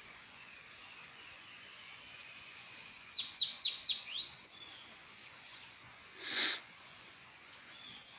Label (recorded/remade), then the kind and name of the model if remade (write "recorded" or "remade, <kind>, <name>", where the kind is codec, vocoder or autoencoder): remade, vocoder, Vocos